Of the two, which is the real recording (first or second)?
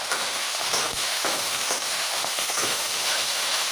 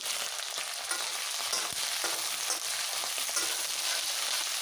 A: second